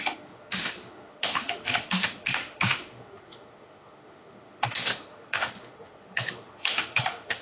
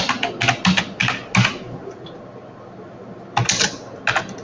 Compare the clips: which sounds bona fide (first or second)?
second